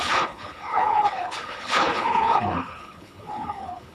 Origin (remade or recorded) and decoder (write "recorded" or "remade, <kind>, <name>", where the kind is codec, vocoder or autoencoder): remade, codec, HILCodec